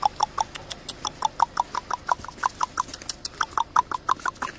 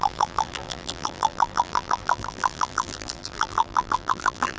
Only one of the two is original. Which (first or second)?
first